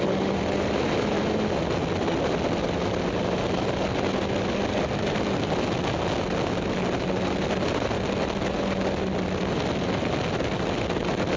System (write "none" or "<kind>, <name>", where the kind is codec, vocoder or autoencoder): none